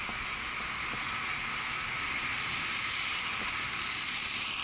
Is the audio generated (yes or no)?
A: no